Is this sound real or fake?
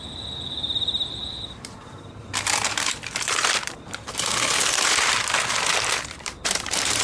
fake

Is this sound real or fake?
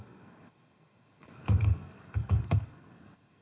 fake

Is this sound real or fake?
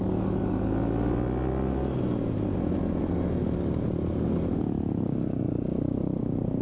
real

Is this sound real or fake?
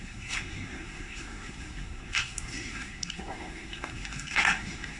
fake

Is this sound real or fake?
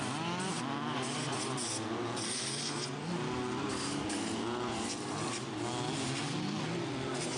real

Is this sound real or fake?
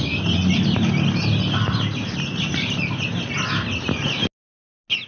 real